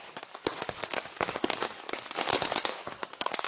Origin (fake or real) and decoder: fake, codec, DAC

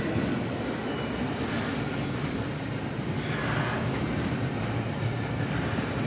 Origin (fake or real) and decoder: real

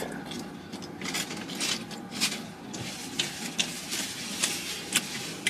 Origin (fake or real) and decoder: real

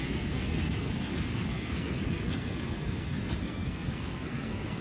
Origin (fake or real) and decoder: fake, codec, SNAC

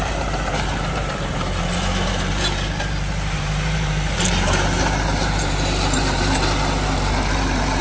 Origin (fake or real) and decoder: fake, vocoder, BigVGAN v2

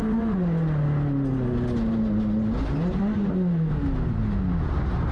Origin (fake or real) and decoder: real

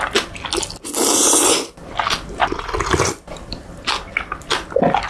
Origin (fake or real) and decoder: real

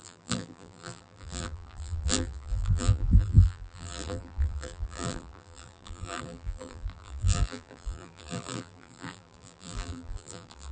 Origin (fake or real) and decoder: fake, vocoder, BigVGAN v2